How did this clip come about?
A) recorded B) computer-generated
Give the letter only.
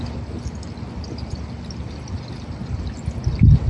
A